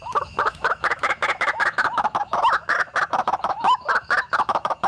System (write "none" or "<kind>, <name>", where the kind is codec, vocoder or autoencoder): autoencoder, DAC-VAE